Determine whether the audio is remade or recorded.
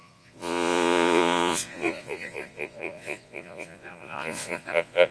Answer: remade